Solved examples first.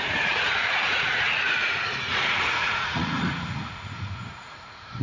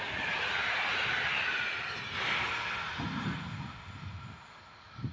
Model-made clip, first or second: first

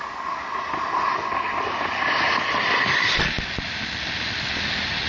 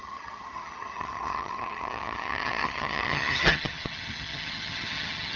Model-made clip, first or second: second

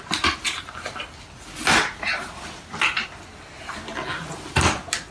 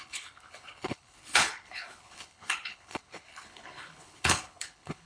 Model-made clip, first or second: second